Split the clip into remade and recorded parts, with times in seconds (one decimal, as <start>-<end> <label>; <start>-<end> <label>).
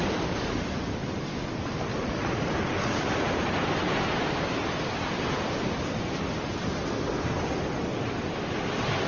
0.0-1.0 remade; 1.0-9.1 recorded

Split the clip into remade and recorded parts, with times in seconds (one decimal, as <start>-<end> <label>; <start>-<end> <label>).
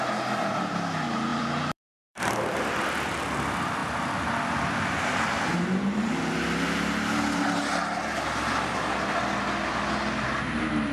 0.0-1.3 recorded; 1.3-2.3 remade; 2.3-10.9 recorded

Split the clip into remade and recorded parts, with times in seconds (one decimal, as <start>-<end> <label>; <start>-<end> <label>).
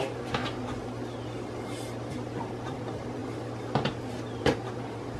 0.0-0.4 remade; 0.4-2.4 recorded; 2.4-3.2 remade; 3.2-4.4 recorded; 4.4-5.2 remade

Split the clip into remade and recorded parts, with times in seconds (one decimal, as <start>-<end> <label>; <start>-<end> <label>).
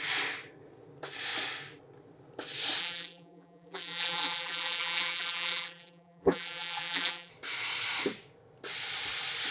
0.0-2.8 recorded; 2.8-7.3 remade; 7.3-9.5 recorded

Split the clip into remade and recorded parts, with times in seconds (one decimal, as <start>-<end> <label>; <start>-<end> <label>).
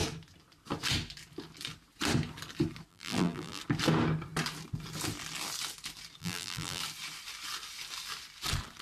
0.0-2.9 recorded; 2.9-3.6 remade; 3.6-6.2 recorded; 6.2-6.8 remade; 6.8-8.8 recorded